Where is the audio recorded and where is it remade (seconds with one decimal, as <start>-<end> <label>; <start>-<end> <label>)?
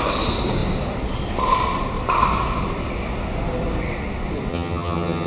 0.0-4.5 recorded; 4.5-5.3 remade